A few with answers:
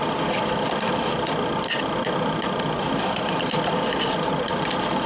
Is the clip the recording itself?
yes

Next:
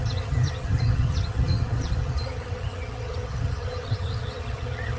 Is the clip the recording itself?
no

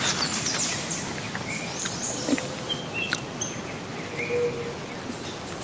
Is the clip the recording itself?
yes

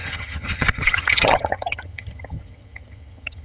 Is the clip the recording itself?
no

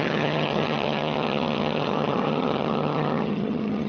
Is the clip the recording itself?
no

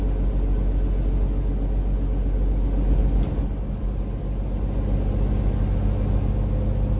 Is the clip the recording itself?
yes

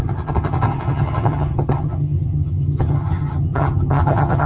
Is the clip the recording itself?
no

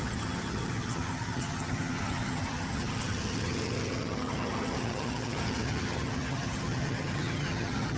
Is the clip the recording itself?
no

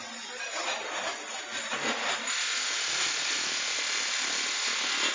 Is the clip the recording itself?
yes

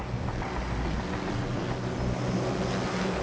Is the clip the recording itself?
yes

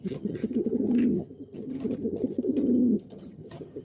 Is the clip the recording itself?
no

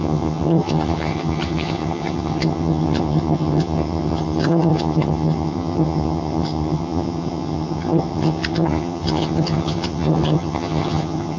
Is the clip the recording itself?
no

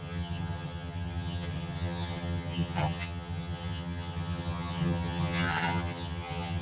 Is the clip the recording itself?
no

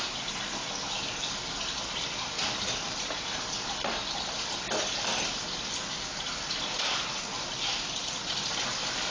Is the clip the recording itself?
yes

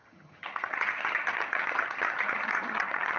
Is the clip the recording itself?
no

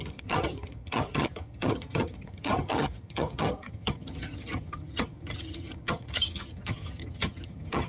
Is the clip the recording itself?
no